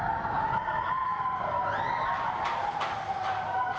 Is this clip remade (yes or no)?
no